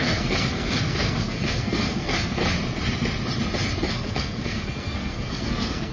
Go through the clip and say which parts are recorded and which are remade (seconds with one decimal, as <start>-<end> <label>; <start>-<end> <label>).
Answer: 0.0-2.4 remade; 2.4-3.9 recorded; 3.9-5.9 remade